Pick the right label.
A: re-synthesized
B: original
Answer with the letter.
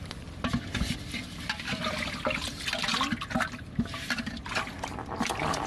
B